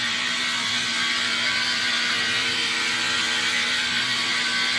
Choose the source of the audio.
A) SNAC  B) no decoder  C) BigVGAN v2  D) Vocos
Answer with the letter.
C